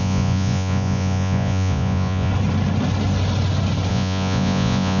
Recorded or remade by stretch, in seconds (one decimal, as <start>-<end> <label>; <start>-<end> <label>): 0.0-2.3 remade; 2.3-3.9 recorded; 3.9-5.0 remade

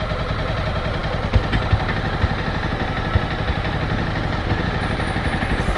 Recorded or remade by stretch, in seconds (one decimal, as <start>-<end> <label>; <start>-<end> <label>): 0.0-5.8 recorded